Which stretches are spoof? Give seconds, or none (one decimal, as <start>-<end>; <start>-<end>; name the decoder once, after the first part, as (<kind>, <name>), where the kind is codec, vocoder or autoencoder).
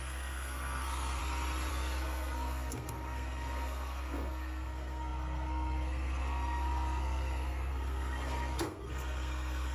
0.0-1.2 (codec, SNAC); 1.7-9.7